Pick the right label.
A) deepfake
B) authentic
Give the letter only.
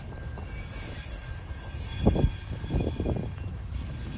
B